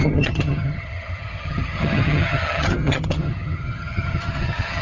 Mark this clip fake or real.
fake